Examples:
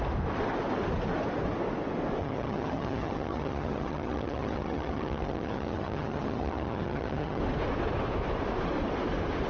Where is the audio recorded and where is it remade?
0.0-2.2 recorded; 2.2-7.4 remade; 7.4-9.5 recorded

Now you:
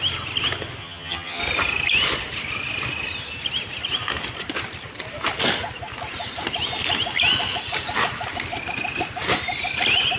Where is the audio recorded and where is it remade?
0.0-0.8 recorded; 0.8-1.4 remade; 1.4-10.2 recorded

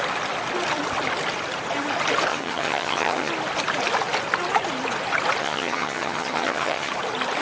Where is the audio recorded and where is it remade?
0.0-2.3 recorded; 2.3-3.3 remade; 3.3-5.4 recorded; 5.4-6.9 remade; 6.9-7.4 recorded

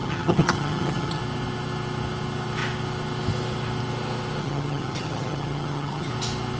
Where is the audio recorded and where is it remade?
0.0-1.2 remade; 1.2-4.4 recorded; 4.4-6.1 remade; 6.1-6.6 recorded